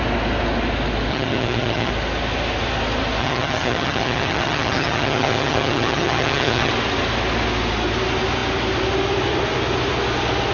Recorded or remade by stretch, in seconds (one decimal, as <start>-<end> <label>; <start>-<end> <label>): 0.0-1.1 recorded; 1.1-1.9 remade; 1.9-3.2 recorded; 3.2-6.7 remade; 6.7-10.5 recorded